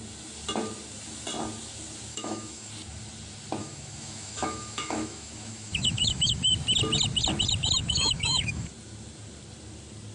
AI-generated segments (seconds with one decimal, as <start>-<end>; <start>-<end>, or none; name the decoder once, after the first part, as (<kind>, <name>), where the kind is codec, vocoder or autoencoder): 2.1-2.7 (autoencoder, DAC-VAE); 3.6-6.5; 7.8-8.7